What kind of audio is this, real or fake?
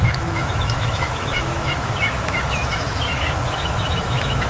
fake